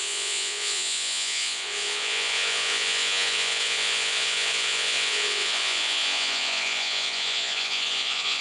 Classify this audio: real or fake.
fake